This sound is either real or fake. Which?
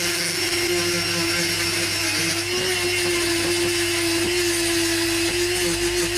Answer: real